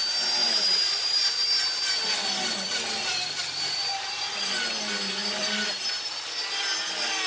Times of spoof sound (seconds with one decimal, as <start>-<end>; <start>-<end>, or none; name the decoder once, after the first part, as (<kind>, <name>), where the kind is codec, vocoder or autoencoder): 0.4-1.6 (vocoder, BigVGAN v2); 5.2-5.7